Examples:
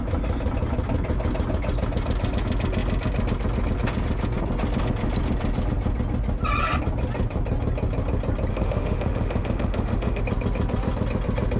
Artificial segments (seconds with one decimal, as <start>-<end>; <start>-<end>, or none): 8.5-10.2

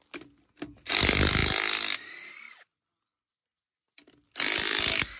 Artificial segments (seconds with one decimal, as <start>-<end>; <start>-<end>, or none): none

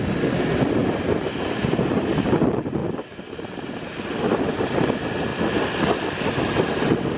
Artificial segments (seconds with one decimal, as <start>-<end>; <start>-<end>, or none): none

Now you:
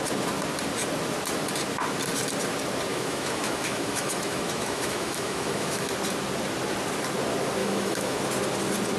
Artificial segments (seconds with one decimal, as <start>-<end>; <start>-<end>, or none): 2.9-5.9; 7.6-8.2